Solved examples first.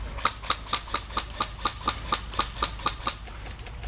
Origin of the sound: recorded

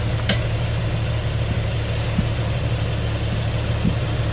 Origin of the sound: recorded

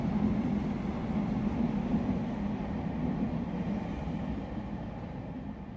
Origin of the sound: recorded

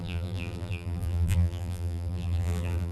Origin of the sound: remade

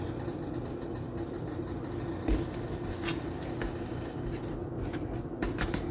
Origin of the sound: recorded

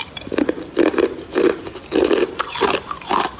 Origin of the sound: recorded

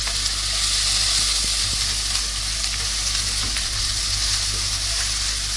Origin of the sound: recorded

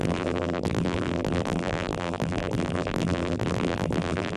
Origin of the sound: remade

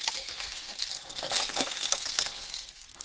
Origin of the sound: remade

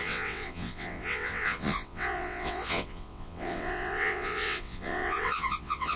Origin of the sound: remade